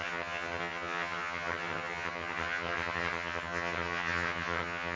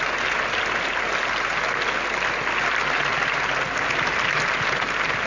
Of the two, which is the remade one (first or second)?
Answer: first